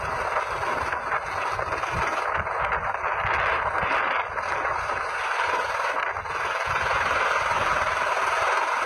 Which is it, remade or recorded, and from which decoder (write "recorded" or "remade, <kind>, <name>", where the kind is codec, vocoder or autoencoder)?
recorded